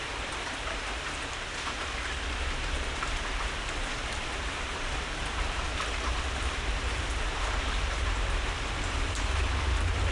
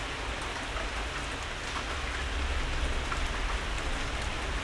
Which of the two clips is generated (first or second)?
first